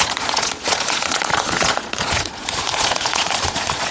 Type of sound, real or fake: fake